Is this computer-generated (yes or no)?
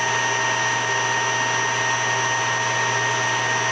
no